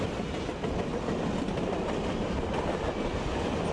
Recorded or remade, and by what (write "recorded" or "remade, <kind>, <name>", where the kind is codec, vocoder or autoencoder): recorded